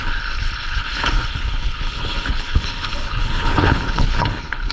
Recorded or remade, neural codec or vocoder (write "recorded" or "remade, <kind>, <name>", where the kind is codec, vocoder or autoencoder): remade, codec, HILCodec